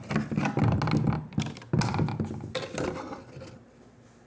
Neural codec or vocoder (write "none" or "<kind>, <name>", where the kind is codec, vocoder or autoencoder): none